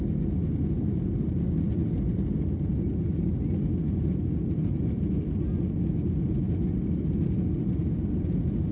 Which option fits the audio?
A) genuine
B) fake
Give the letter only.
A